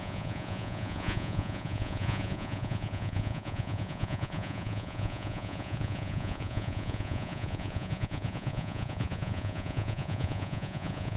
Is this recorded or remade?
remade